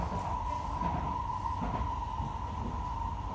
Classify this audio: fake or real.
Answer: real